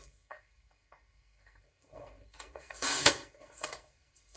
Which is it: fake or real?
fake